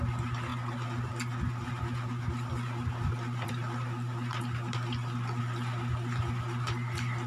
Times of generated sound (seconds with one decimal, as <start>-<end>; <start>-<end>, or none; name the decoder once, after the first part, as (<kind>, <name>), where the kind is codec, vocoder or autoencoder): 0.0-0.5 (vocoder, BigVGAN v2); 2.1-7.3